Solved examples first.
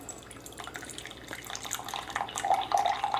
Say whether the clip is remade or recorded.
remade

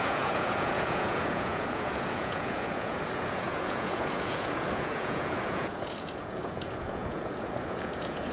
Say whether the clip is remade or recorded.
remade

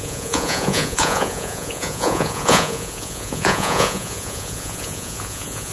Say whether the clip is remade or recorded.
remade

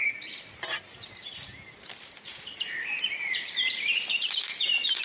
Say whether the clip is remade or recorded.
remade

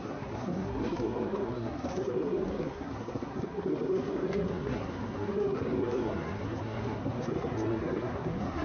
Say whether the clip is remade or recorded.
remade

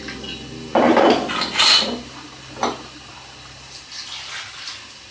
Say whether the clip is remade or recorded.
recorded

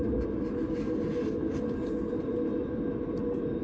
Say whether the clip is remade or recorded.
recorded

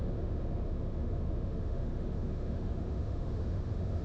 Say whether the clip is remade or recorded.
remade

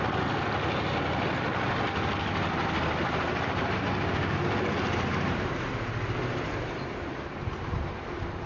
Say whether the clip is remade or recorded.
recorded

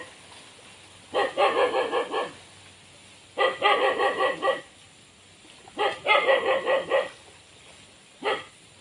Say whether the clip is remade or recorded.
recorded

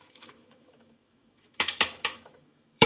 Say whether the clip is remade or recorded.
remade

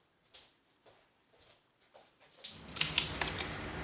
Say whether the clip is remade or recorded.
recorded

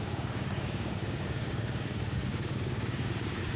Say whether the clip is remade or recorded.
remade